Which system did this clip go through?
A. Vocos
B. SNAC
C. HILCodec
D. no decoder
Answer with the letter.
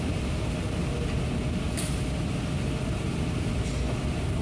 D